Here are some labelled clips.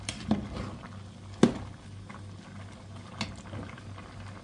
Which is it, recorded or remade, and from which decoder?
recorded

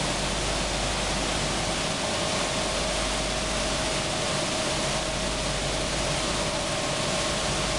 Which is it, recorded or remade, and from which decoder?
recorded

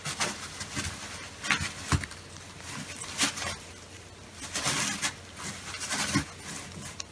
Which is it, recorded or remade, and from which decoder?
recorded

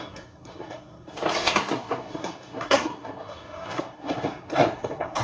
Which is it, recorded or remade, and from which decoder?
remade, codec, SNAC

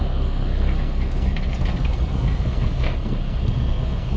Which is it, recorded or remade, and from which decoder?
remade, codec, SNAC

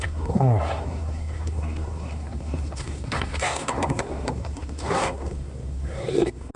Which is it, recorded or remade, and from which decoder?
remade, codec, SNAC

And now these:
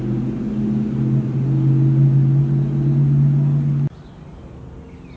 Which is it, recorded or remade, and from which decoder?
recorded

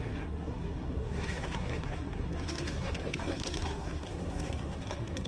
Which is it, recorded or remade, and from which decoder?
remade, codec, SNAC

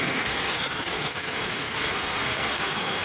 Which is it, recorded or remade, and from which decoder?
remade, codec, SNAC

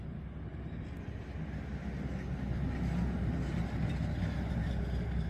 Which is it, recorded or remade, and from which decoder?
recorded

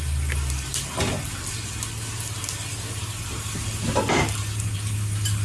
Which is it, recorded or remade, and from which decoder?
recorded